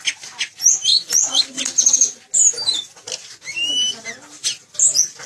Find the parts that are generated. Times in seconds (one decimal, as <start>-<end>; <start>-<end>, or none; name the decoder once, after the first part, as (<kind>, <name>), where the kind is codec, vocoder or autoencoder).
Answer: 0.9-1.4 (vocoder, Vocos)